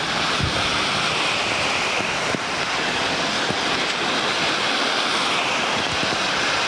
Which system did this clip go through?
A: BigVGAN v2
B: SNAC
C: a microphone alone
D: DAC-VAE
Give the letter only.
A